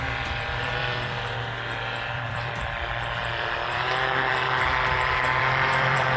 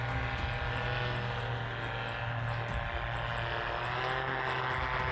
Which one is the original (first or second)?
second